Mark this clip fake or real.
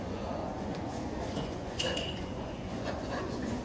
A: fake